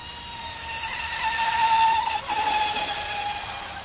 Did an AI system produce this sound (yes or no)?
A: no